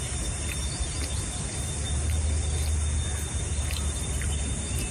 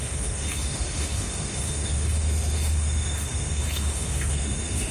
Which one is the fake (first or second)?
second